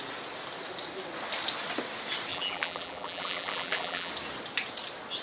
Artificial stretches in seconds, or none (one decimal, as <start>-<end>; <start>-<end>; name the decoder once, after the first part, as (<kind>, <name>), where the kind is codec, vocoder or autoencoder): 2.3-4.1 (vocoder, BigVGAN v2)